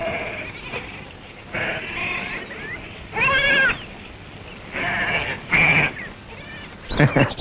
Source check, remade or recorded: recorded